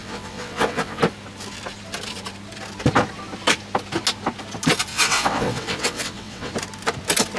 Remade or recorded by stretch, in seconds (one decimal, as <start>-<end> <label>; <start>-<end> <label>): 0.0-1.0 remade; 1.0-4.9 recorded; 4.9-6.5 remade; 6.5-7.4 recorded